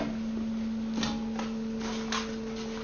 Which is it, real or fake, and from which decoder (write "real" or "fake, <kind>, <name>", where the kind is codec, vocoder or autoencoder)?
real